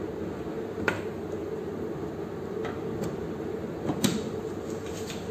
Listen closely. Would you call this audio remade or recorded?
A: recorded